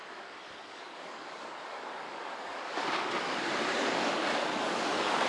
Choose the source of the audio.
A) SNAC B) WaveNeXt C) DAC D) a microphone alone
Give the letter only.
C